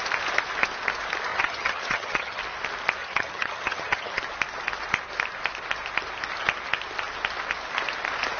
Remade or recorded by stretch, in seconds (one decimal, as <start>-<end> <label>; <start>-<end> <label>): 0.0-1.3 recorded; 1.3-2.4 remade; 2.4-3.0 recorded; 3.0-4.2 remade; 4.2-8.4 recorded